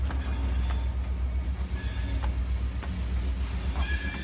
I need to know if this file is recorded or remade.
recorded